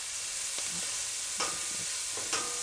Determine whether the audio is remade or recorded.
recorded